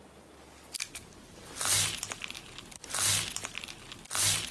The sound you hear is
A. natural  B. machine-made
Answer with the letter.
A